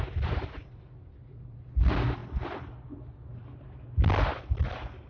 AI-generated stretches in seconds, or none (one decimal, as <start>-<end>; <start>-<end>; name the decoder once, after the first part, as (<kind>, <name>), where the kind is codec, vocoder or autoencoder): 0.0-2.2 (vocoder, BigVGAN v2)